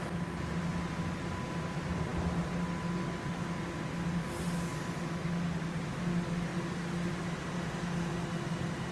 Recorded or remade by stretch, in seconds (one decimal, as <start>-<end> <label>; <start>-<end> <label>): 0.0-8.9 recorded